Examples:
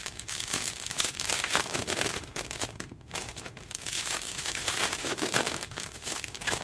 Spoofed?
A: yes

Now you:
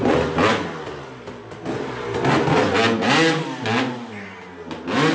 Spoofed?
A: no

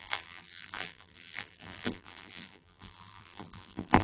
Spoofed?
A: yes